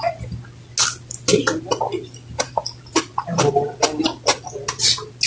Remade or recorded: recorded